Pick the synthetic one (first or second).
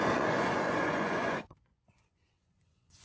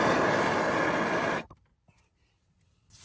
first